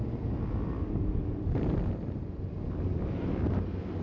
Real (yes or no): yes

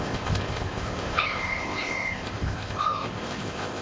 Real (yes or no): no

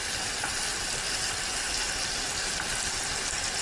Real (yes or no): yes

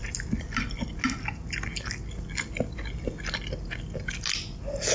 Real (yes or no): yes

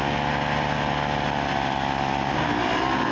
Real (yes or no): yes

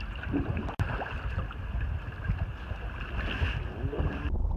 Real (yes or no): yes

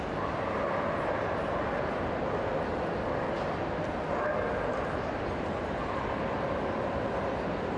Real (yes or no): yes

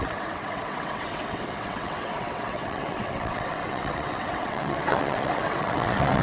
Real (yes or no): no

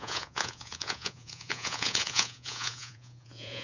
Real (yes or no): no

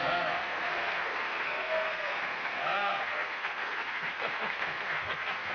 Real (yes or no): no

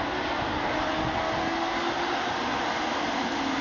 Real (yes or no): yes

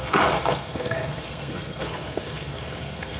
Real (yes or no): no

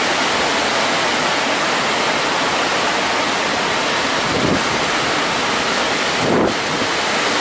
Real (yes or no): yes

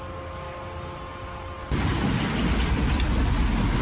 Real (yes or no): yes